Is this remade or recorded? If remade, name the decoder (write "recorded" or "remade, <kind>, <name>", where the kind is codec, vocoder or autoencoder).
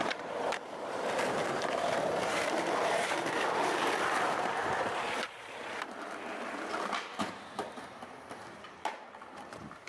remade, vocoder, BigVGAN v2